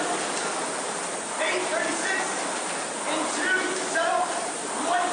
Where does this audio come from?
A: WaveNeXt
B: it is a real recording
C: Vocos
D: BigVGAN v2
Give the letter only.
D